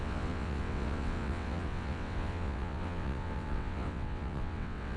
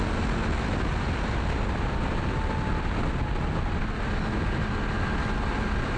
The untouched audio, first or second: second